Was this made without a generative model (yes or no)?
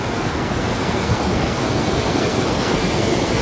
no